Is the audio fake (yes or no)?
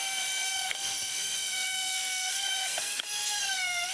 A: yes